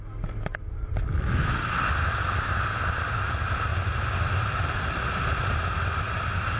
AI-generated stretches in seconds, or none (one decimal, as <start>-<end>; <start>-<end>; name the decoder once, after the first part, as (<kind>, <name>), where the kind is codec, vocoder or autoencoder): none